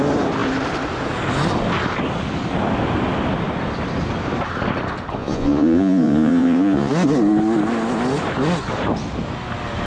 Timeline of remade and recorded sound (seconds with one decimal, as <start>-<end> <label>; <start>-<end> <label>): 0.0-5.2 recorded; 5.2-6.9 remade; 6.9-9.9 recorded